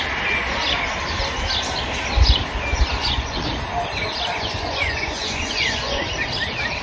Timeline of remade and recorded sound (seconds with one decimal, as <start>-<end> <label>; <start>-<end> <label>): 0.0-3.0 recorded; 3.0-3.5 remade; 3.5-4.3 recorded; 4.3-6.0 remade; 6.0-6.8 recorded